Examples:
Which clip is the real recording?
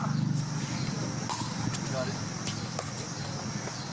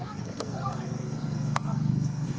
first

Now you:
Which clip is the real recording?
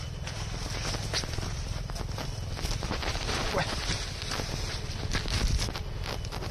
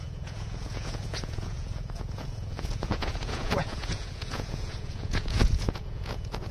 first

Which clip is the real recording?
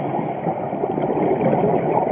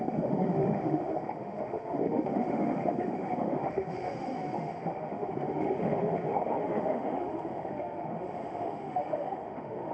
first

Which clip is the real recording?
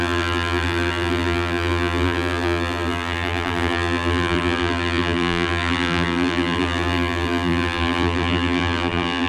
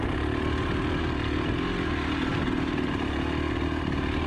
second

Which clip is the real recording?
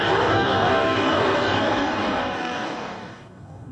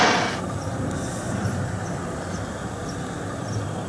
second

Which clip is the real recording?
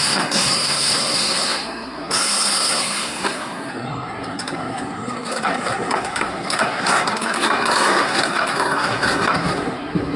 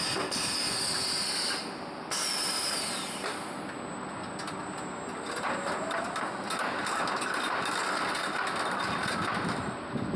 second